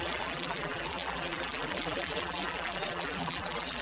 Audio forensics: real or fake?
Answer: fake